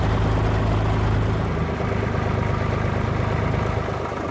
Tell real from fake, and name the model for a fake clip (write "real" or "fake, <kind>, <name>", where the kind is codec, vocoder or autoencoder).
real